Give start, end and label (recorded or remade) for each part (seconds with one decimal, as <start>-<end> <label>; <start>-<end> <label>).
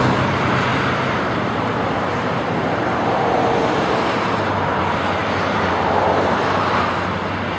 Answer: 0.0-0.7 recorded; 0.7-4.8 remade; 4.8-5.2 recorded; 5.2-6.9 remade; 6.9-7.6 recorded